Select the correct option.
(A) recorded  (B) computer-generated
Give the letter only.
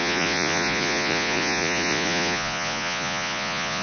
B